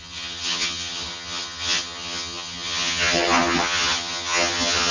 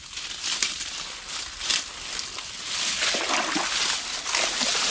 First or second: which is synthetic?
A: first